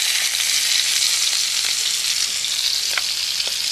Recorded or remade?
recorded